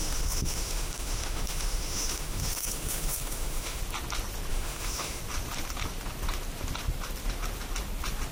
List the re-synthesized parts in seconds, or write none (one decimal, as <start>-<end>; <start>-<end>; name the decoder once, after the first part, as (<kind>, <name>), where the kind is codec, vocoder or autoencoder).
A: 0.0-3.8 (autoencoder, DAC-VAE); 4.5-5.2